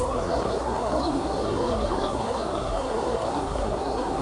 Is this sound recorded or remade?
remade